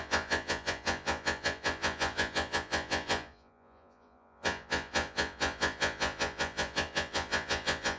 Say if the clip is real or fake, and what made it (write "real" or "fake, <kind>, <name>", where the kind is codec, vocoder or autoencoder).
fake, vocoder, Vocos